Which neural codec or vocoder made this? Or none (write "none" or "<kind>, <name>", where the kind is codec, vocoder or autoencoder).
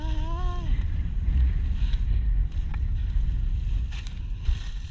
none